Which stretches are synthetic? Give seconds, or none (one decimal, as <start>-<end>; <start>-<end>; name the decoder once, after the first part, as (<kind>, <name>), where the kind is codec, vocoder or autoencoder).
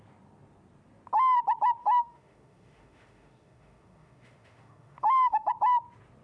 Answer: 1.8-5.5 (autoencoder, DAC-VAE)